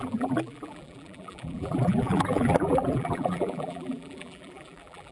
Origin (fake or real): fake